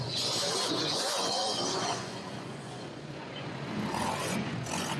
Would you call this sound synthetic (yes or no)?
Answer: yes